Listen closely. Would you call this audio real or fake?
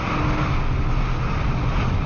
real